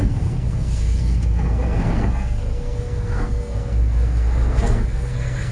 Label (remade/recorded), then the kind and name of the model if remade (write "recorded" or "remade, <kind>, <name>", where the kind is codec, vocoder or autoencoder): remade, codec, SNAC